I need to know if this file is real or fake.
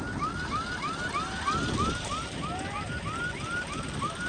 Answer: real